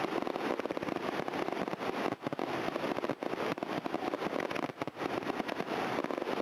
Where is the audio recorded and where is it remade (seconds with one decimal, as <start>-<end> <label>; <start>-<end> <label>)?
0.0-6.4 recorded